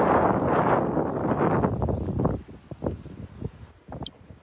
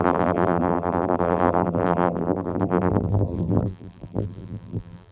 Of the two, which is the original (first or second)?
first